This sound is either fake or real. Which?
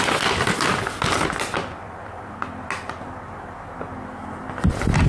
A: real